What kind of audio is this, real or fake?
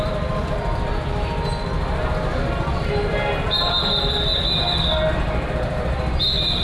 real